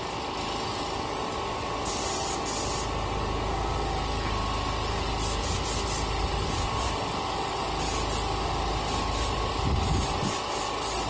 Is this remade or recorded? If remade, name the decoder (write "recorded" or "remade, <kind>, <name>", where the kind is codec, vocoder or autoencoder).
recorded